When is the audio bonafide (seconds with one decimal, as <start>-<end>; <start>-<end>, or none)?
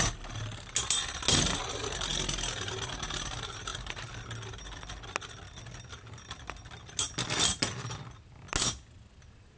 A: 0.0-9.6